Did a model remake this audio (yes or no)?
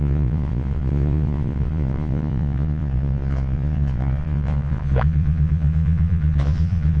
yes